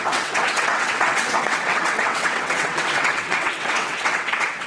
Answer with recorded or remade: remade